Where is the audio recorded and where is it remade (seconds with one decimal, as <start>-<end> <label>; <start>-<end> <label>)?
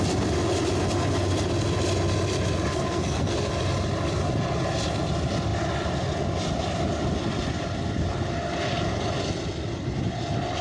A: 0.0-2.7 recorded; 2.7-3.5 remade; 3.5-10.6 recorded